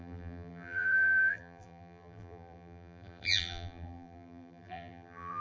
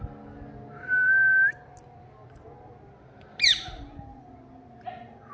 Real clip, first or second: second